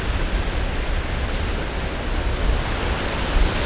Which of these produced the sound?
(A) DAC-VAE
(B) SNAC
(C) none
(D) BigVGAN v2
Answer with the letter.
C